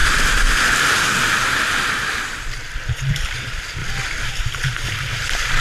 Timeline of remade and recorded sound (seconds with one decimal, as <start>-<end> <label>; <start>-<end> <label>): 0.0-1.7 recorded; 1.7-3.8 remade; 3.8-4.3 recorded; 4.3-5.6 remade